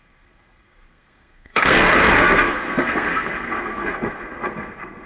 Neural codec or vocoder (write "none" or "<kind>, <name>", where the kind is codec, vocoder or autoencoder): codec, SNAC